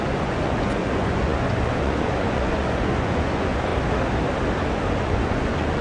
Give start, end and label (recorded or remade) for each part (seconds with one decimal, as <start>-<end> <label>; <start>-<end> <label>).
0.0-3.7 remade; 3.7-5.0 recorded; 5.0-5.8 remade